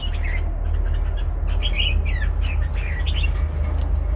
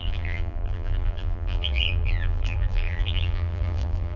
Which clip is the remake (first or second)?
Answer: second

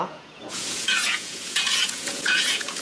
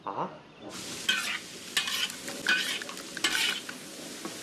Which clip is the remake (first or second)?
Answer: first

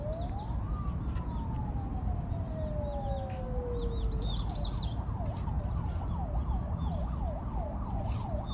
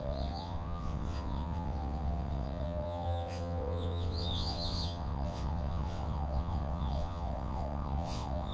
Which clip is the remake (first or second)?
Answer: second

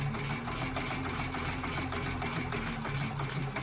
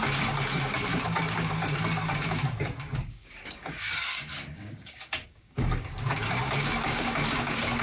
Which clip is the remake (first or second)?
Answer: second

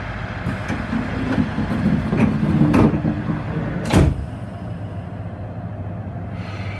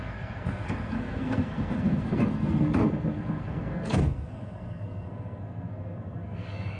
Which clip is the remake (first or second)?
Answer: second